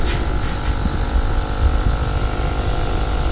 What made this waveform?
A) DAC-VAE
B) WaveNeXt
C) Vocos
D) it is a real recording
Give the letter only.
D